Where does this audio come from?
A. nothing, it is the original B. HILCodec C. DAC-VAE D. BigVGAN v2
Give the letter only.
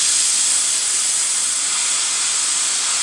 A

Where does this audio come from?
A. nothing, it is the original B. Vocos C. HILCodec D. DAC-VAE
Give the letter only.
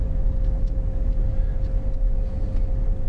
A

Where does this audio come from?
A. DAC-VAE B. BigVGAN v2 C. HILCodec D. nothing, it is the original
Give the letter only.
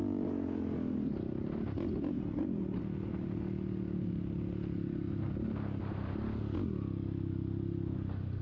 D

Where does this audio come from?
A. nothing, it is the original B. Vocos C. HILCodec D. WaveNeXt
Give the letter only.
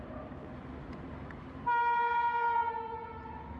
A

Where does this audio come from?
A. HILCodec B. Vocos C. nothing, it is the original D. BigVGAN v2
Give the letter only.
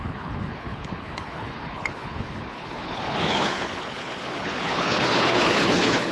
A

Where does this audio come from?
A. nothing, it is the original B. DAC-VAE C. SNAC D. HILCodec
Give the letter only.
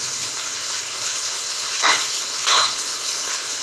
D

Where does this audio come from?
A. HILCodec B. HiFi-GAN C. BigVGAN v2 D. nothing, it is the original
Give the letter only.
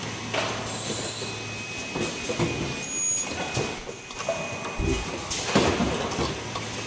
D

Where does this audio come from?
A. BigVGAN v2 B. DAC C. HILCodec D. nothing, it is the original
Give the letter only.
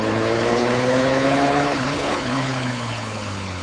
C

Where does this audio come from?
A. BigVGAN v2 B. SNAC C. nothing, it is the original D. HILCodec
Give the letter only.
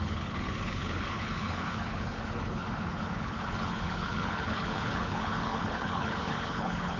D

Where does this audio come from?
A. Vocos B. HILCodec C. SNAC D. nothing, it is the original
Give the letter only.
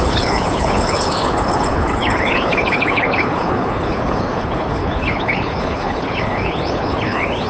B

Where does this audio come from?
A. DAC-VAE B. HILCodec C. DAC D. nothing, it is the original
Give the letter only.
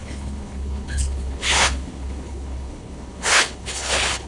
B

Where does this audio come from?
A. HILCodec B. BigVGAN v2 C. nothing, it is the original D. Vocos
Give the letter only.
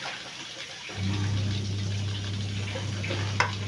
C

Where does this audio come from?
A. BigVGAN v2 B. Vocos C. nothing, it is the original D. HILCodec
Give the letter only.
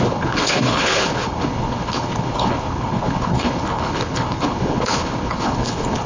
D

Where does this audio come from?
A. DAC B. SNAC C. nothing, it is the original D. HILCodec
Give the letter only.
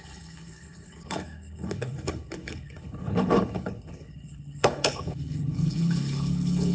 D